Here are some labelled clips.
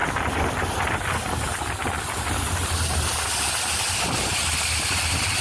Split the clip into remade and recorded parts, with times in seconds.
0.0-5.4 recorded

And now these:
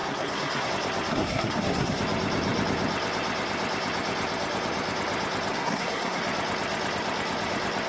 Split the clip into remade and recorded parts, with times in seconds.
0.0-0.7 remade; 0.7-1.1 recorded; 1.1-2.0 remade; 2.0-5.5 recorded; 5.5-6.2 remade; 6.2-7.9 recorded

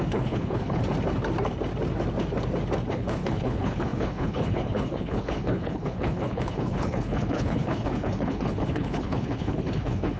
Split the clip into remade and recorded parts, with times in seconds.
0.0-0.8 remade; 0.8-2.9 recorded; 2.9-10.2 remade